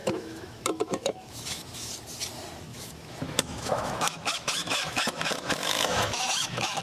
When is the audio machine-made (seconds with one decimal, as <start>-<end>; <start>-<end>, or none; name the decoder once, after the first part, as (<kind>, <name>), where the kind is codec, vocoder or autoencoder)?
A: 0.0-1.9 (autoencoder, DAC-VAE); 2.7-6.8